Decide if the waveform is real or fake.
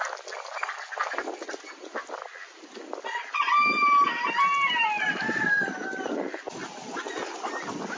real